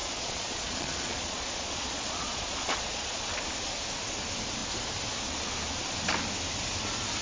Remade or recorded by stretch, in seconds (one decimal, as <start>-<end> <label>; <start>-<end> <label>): 0.0-3.4 remade; 3.4-7.2 recorded